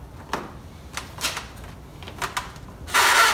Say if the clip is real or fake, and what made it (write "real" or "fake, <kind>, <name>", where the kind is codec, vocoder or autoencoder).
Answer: real